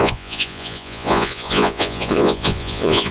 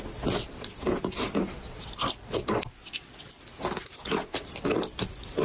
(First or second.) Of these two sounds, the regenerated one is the first